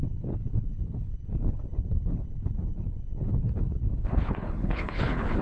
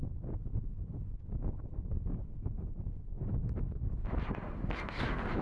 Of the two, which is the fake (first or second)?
first